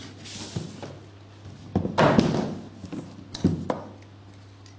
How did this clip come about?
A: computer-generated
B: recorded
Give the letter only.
B